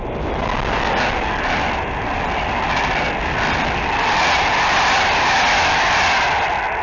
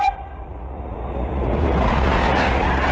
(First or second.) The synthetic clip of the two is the second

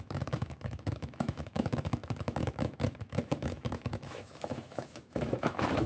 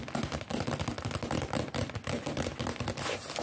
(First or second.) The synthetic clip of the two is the first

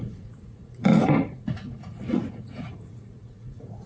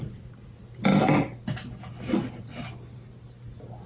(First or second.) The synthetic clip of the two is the first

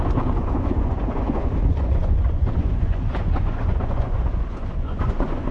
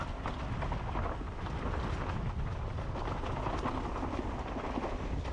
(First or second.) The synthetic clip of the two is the first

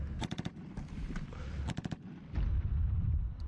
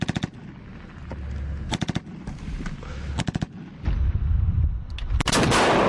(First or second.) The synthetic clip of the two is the first